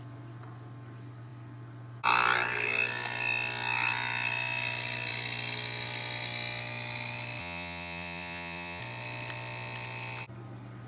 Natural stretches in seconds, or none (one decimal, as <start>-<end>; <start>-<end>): 0.0-7.4; 8.8-10.9